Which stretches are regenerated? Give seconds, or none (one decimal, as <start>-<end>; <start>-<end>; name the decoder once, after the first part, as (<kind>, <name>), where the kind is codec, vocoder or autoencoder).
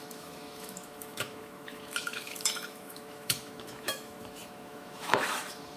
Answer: 0.0-5.8 (autoencoder, DAC-VAE)